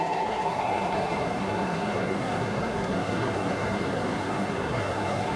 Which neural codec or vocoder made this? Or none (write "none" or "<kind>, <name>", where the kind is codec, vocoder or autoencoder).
codec, SNAC